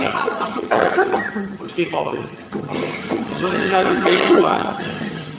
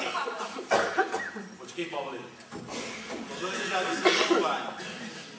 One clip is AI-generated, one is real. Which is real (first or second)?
second